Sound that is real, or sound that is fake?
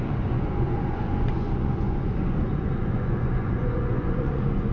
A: fake